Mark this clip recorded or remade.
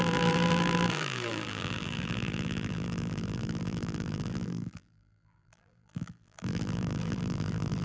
remade